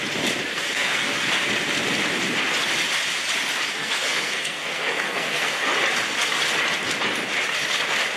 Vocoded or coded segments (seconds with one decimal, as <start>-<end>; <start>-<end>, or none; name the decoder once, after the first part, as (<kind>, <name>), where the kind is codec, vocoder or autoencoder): 0.5-1.3 (codec, SNAC); 3.7-5.7